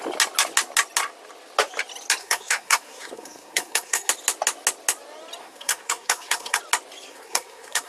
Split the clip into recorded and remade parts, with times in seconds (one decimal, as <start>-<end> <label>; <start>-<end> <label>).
0.0-2.2 recorded; 2.2-4.1 remade; 4.1-5.4 recorded; 5.4-6.6 remade; 6.6-7.1 recorded; 7.1-7.9 remade